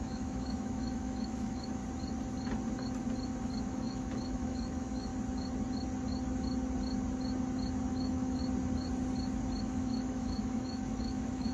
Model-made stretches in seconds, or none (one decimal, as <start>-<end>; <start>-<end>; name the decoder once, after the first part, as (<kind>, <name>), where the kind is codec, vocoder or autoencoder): 0.0-1.8 (autoencoder, DAC-VAE); 3.6-5.1; 7.9-8.4; 9.6-11.5